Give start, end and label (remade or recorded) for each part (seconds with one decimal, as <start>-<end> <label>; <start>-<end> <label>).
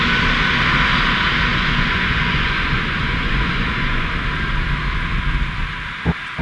0.0-1.5 recorded; 1.5-4.1 remade; 4.1-6.4 recorded